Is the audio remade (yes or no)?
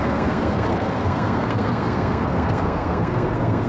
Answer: yes